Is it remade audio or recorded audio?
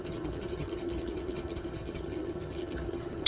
remade